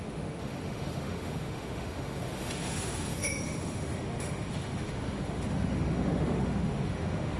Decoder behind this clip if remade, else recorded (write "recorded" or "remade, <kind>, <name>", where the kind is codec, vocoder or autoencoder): remade, autoencoder, DAC-VAE